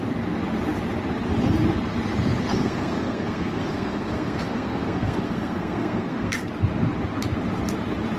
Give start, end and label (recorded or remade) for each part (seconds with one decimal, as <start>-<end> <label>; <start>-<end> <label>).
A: 0.0-2.5 recorded; 2.5-6.5 remade; 6.5-8.2 recorded